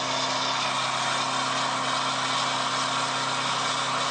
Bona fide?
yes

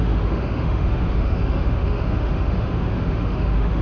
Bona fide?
no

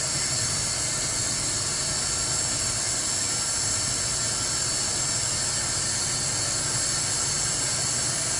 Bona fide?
yes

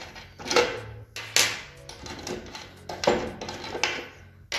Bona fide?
yes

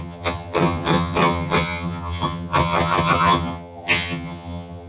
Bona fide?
no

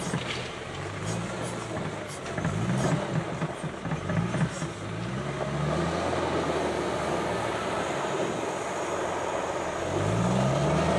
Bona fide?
yes